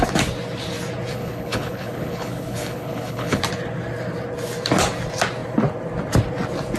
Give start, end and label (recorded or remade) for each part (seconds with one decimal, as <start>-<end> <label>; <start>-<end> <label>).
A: 0.0-1.1 recorded; 1.1-3.4 remade; 3.4-6.8 recorded